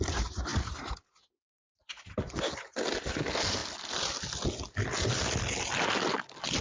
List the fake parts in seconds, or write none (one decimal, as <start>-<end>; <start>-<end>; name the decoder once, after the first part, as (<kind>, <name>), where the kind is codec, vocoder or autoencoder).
none